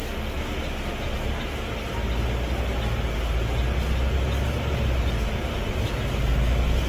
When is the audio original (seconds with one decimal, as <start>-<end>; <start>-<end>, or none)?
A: 0.0-6.9